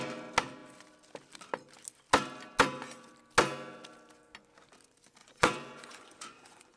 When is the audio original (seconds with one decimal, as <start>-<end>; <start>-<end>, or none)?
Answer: 0.0-5.2